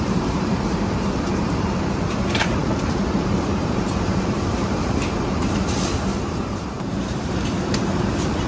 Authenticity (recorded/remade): remade